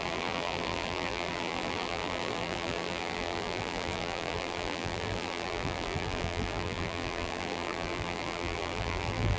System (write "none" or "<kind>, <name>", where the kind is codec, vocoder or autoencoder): vocoder, BigVGAN v2